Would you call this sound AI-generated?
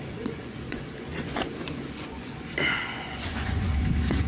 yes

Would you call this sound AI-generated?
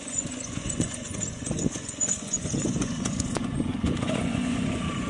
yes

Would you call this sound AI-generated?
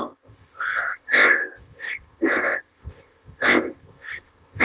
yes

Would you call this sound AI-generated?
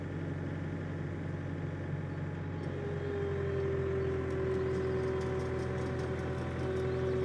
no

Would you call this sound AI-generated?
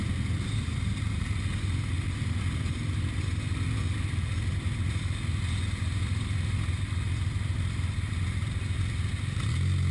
no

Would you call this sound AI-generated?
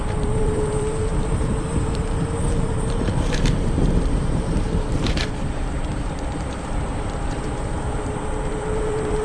yes